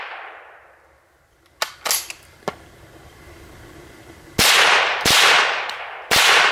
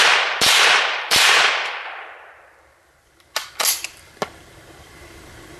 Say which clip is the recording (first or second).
first